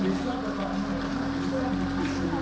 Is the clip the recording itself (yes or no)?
yes